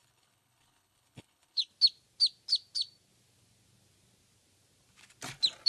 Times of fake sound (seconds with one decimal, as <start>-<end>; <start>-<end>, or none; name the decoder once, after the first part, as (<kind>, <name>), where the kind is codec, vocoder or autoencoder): 0.0-1.7 (codec, HILCodec)